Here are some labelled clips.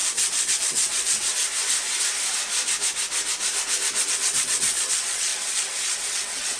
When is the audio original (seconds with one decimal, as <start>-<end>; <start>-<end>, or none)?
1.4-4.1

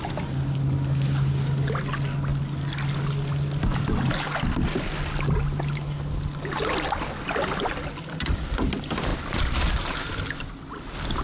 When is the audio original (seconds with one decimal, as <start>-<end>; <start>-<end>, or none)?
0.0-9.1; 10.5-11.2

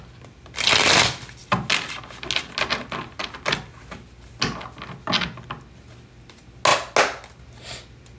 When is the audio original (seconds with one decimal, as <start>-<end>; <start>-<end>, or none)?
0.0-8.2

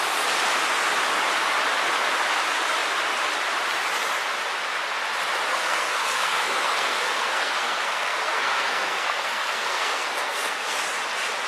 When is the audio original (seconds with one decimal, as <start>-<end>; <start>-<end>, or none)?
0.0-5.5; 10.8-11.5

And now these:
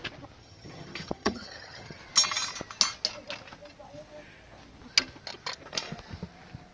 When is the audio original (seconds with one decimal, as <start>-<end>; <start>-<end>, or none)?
0.0-0.4; 2.0-6.7

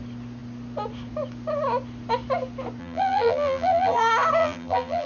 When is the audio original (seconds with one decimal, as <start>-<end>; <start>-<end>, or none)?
0.0-2.8; 4.0-4.4